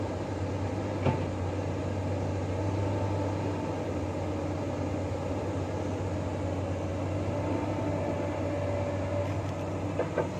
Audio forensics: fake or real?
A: real